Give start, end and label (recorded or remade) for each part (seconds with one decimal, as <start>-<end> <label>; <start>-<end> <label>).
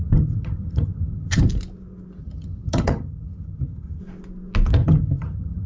0.0-1.4 remade; 1.4-2.2 recorded; 2.2-4.0 remade; 4.0-4.8 recorded; 4.8-5.7 remade